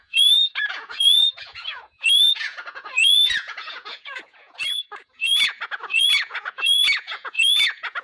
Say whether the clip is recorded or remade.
remade